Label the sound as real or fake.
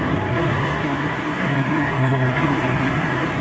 fake